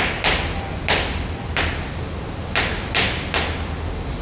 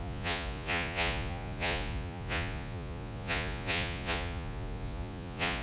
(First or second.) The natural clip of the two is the first